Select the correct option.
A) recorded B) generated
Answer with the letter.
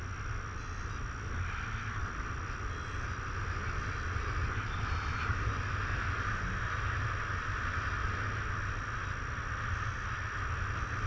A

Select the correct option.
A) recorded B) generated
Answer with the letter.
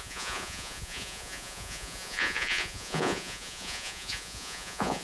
B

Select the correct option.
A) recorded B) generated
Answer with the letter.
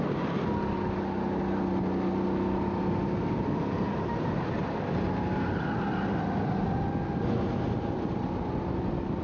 A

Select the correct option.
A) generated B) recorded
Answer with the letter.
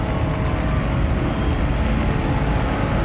B